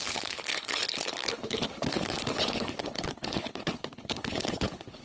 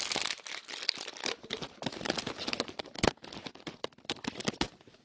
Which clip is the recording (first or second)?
second